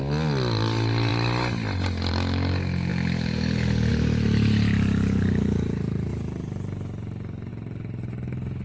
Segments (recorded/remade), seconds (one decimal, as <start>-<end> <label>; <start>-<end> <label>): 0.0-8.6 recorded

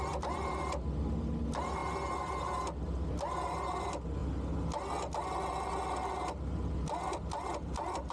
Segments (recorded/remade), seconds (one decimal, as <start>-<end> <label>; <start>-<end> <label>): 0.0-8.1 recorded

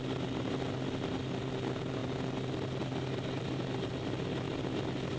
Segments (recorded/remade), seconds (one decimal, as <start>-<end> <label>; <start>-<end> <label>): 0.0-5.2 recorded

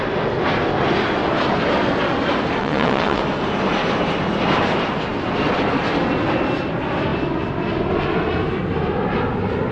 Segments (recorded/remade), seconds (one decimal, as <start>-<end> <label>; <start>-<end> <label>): 0.0-2.6 recorded; 2.6-3.2 remade; 3.2-9.7 recorded

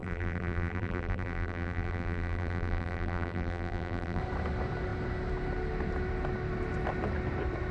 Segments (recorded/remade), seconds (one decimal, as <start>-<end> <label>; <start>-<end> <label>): 0.0-4.2 remade; 4.2-7.7 recorded

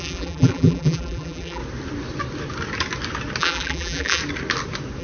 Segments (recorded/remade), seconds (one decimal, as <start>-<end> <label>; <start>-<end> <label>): 0.0-1.6 remade; 1.6-3.4 recorded; 3.4-4.2 remade; 4.2-5.0 recorded

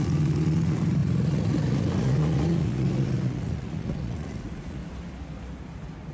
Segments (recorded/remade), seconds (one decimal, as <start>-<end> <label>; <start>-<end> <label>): 0.0-4.8 remade; 4.8-6.1 recorded